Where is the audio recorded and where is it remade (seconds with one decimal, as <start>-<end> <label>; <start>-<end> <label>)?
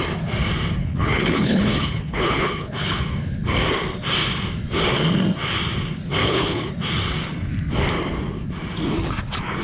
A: 0.0-0.8 recorded; 0.8-3.0 remade; 3.0-6.2 recorded; 6.2-6.7 remade; 6.7-9.6 recorded